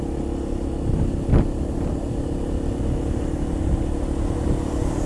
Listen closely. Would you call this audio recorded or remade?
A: recorded